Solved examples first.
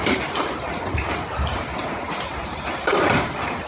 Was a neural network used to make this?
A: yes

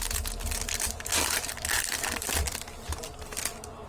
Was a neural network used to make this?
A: no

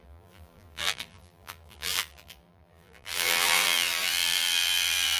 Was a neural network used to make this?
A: yes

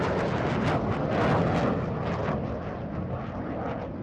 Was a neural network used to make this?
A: no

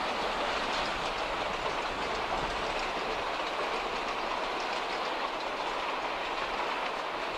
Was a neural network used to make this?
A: no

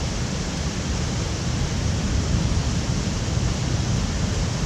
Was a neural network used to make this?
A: yes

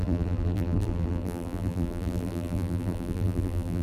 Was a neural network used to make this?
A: yes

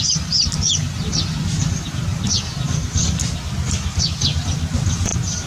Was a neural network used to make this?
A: no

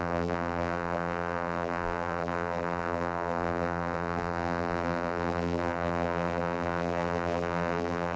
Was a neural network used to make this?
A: yes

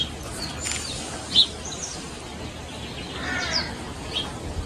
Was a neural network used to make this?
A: no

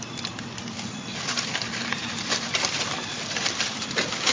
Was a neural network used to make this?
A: yes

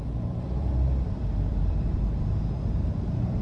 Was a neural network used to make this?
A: yes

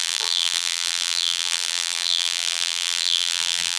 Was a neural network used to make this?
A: yes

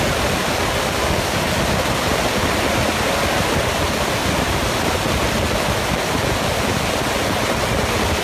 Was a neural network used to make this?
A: no